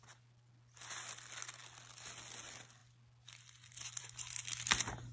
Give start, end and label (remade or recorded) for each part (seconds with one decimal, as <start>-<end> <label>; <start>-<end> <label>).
0.0-5.1 recorded